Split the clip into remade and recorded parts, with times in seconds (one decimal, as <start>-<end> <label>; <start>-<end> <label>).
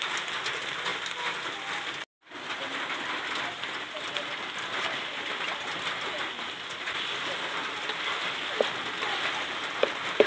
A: 0.0-10.3 recorded